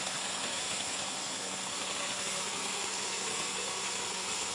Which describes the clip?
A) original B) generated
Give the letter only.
B